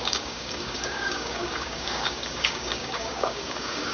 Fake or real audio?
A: fake